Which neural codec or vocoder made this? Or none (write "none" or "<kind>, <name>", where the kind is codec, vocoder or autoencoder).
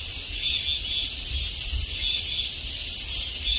none